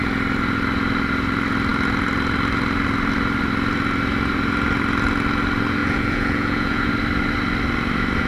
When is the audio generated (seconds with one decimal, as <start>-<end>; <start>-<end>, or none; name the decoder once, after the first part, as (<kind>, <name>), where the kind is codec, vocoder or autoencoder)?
5.8-6.9 (vocoder, Vocos)